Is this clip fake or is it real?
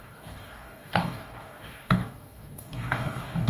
fake